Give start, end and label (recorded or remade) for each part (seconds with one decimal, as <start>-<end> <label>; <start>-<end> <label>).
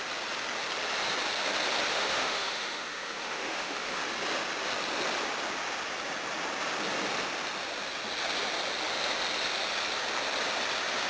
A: 0.0-1.9 recorded; 1.9-4.0 remade; 4.0-11.1 recorded